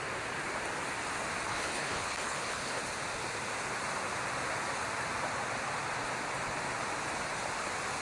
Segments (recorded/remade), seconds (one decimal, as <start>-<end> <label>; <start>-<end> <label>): 0.0-1.5 recorded; 1.5-2.8 remade; 2.8-8.0 recorded